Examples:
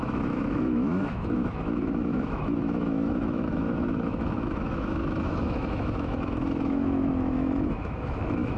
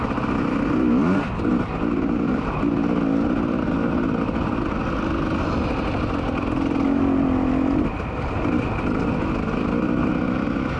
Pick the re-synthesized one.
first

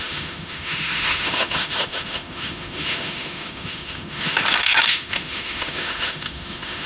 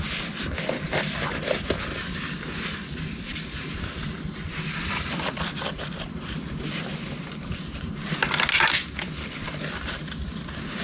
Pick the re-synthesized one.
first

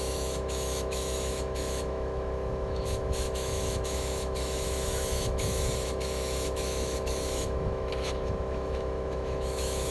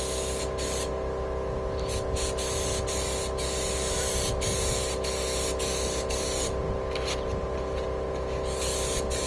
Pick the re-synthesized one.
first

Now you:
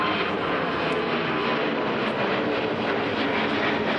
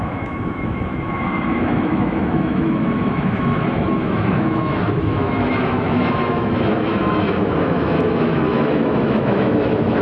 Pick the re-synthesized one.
second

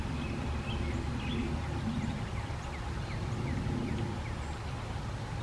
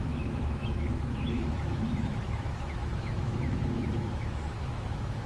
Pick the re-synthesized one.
second